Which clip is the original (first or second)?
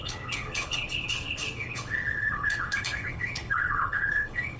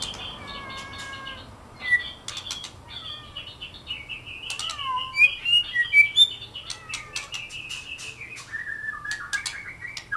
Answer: second